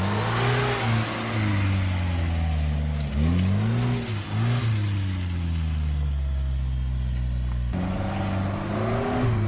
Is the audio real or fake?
real